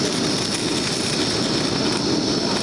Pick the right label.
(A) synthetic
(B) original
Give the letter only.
B